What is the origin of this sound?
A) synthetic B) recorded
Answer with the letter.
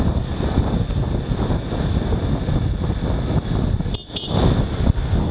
B